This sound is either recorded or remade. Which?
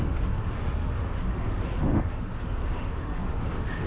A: remade